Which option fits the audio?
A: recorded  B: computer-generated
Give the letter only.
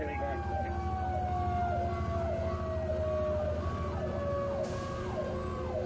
A